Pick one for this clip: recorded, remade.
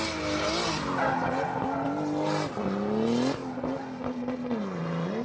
recorded